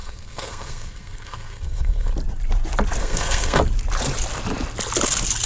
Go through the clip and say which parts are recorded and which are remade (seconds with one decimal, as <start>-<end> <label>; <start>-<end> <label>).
0.0-2.1 remade; 2.1-3.0 recorded; 3.0-3.6 remade; 3.6-5.5 recorded